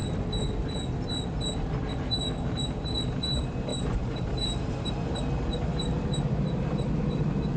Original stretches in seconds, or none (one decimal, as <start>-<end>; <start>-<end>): 0.0-3.7; 4.9-7.6